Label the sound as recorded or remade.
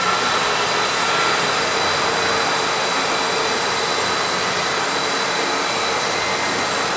recorded